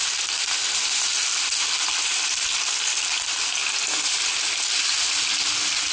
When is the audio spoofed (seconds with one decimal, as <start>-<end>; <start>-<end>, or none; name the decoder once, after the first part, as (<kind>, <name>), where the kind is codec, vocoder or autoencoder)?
none